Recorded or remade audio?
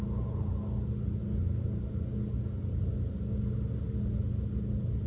recorded